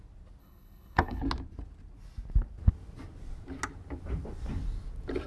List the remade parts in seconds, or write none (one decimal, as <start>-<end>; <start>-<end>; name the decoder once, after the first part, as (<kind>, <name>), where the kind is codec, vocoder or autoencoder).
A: 0.4-1.2 (codec, HILCodec)